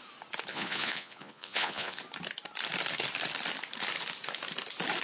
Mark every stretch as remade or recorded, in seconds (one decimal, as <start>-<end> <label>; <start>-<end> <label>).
0.0-0.5 recorded; 0.5-2.0 remade; 2.0-5.0 recorded